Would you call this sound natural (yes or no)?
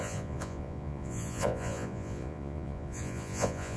no